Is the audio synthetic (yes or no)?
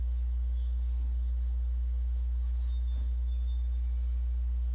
no